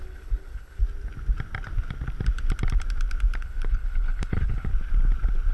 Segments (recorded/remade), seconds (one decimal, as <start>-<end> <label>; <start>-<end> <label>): 0.0-0.8 remade; 0.8-3.4 recorded; 3.4-4.7 remade; 4.7-5.5 recorded